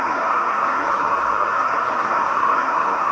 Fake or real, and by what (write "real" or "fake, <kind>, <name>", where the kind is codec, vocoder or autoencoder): fake, codec, SNAC